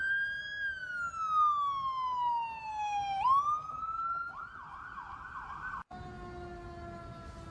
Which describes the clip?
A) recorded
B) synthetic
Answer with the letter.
A